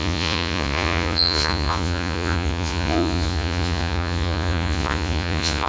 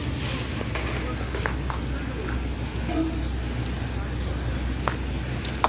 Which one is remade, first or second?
first